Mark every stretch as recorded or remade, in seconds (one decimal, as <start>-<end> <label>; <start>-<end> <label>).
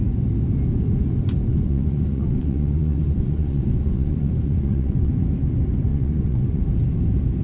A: 0.0-1.5 recorded; 1.5-5.1 remade; 5.1-5.9 recorded; 5.9-6.6 remade; 6.6-7.4 recorded